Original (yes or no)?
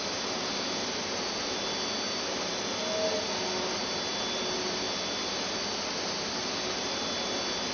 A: yes